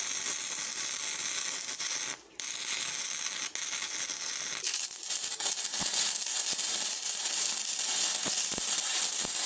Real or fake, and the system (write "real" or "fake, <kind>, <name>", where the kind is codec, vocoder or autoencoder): real